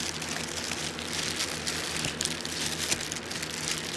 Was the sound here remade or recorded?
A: recorded